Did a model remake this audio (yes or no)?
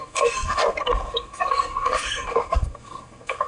yes